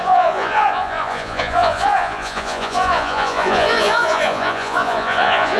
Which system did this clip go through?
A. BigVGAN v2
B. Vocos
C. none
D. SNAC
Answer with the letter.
B